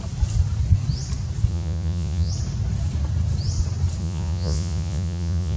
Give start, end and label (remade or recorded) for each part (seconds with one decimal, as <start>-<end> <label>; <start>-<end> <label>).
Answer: 0.0-1.5 recorded; 1.5-2.3 remade; 2.3-4.0 recorded; 4.0-5.6 remade